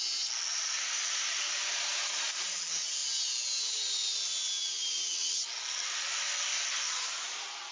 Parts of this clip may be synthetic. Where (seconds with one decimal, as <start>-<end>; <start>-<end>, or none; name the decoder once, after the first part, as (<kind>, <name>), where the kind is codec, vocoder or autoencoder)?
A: 0.5-2.6 (vocoder, BigVGAN v2)

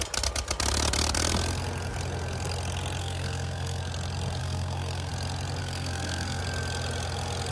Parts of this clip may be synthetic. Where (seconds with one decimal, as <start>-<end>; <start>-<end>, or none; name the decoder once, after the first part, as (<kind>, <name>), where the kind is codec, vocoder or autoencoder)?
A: 3.0-3.8 (codec, SNAC); 4.4-5.1; 5.6-6.4

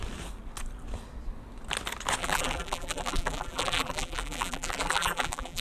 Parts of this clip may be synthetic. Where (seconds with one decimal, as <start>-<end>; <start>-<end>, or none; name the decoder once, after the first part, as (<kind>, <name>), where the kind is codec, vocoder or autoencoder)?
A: 2.2-5.6 (vocoder, BigVGAN v2)

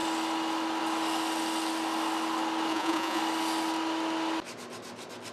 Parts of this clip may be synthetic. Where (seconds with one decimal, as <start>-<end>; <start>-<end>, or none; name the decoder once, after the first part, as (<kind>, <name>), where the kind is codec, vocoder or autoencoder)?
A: 2.7-3.2 (vocoder, Vocos)

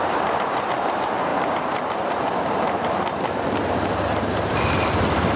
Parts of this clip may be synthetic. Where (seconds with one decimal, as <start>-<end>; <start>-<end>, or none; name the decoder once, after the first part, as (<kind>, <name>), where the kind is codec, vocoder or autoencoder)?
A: 0.0-5.4 (vocoder, BigVGAN v2)

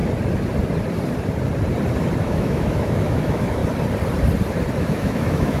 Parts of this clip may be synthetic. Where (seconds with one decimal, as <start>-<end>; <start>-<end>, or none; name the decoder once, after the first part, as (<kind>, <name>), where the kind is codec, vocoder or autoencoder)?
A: 2.2-3.6 (autoencoder, DAC-VAE); 4.8-5.6